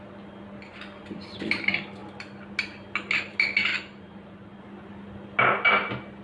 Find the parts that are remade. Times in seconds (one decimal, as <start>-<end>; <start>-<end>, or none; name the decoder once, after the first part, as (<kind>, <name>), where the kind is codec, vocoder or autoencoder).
3.7-4.6 (vocoder, BigVGAN v2)